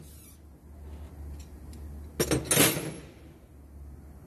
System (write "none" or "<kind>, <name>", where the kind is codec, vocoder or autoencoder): none